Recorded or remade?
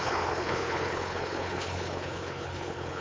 remade